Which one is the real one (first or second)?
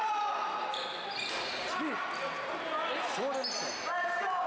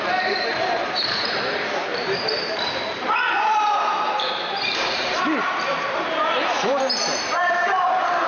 first